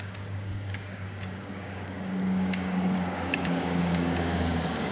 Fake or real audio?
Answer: fake